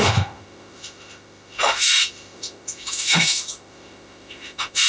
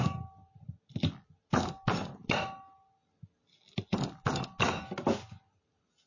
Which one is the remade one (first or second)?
first